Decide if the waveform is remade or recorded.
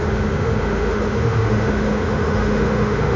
remade